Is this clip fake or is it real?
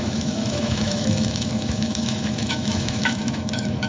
fake